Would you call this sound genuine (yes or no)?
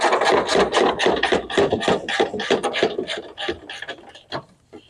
yes